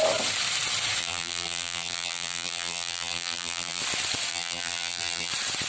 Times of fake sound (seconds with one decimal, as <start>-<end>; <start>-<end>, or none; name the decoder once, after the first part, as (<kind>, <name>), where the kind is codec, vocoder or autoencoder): 1.0-3.8 (vocoder, BigVGAN v2); 4.3-5.3